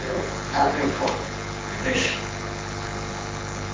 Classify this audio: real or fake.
fake